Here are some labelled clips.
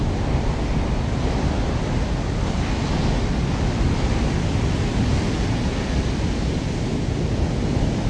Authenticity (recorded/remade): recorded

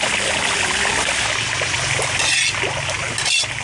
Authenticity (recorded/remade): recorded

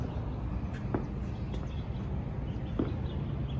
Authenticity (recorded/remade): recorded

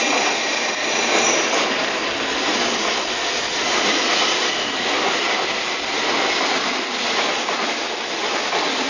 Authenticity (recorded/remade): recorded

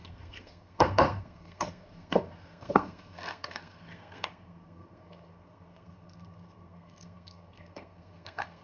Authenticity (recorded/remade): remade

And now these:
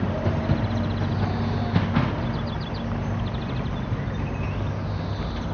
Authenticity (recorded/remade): recorded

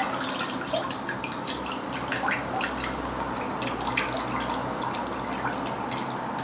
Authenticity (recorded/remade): recorded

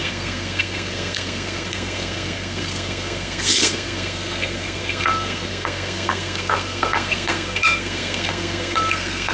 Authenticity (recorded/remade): remade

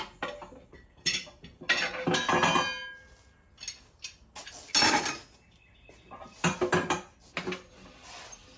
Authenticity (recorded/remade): recorded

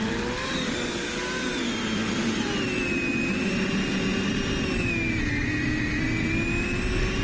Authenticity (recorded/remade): recorded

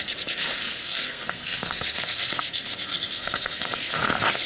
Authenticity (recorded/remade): remade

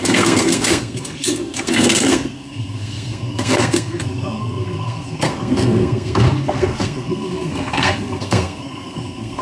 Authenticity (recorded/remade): remade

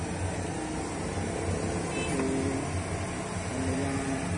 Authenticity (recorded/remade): recorded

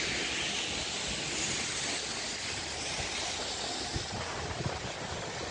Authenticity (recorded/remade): recorded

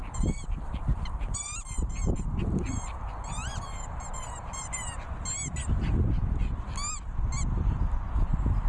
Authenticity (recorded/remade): recorded